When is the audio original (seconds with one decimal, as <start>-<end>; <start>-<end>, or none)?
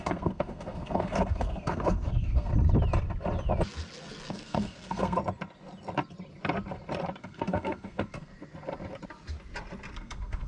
2.5-4.3; 5.2-7.2; 8.3-9.9